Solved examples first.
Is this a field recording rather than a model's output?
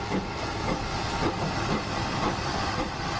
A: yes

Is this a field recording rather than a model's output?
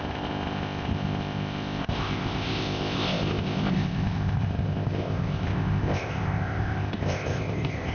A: no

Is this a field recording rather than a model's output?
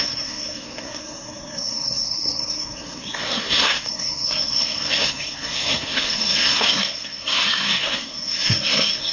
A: no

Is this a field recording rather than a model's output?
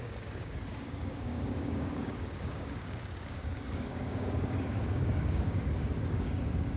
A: no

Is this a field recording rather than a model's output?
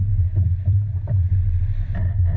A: yes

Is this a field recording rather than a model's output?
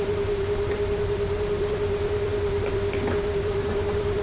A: no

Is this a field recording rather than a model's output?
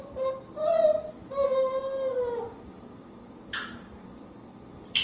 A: yes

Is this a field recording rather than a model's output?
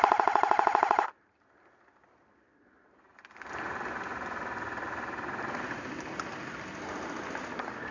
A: yes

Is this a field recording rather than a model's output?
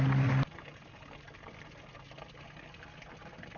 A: yes